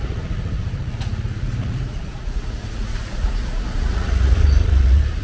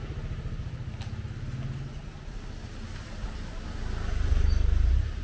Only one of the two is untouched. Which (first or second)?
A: second